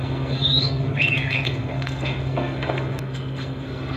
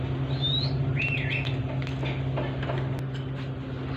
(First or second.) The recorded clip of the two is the second